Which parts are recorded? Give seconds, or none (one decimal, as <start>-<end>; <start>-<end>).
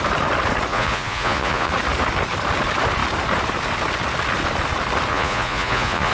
0.0-0.7; 1.7-5.1